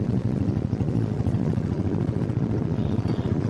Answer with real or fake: fake